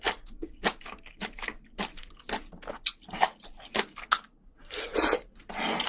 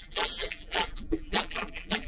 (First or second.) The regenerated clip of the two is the second